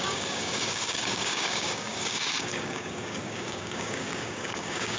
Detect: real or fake fake